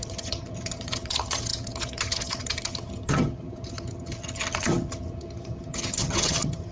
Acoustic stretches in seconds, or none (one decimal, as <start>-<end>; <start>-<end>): none